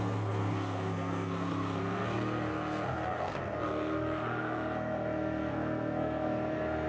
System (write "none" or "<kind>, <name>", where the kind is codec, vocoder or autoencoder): codec, SNAC